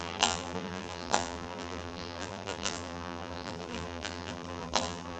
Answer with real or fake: fake